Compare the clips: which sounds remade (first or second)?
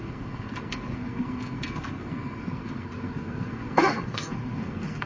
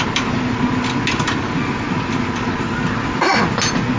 first